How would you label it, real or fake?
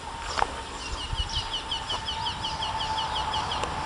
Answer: real